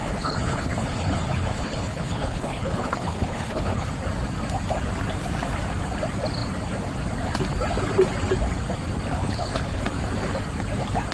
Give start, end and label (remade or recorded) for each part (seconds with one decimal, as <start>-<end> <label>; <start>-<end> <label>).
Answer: 0.0-3.9 remade; 3.9-9.2 recorded; 9.2-9.8 remade; 9.8-11.1 recorded